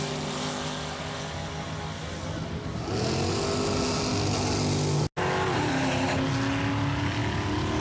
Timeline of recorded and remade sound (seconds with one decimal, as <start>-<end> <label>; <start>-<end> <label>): 0.0-7.8 recorded